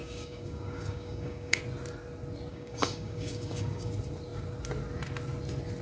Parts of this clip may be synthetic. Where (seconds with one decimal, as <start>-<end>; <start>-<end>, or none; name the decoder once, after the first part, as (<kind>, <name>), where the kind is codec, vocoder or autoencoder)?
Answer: 0.0-1.6 (codec, DAC); 2.5-3.9